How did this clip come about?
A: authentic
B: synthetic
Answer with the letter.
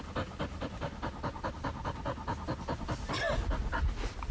A